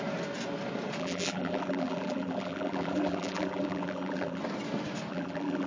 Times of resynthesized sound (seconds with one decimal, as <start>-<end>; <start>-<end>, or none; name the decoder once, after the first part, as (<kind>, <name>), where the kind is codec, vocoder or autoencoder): 1.0-4.4 (vocoder, BigVGAN v2); 5.1-5.7